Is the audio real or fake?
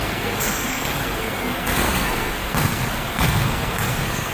fake